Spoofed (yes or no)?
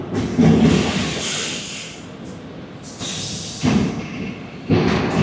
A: no